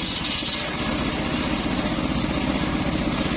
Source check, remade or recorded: recorded